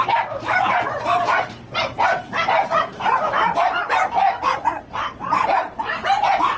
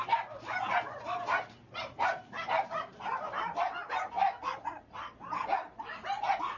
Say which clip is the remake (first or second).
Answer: first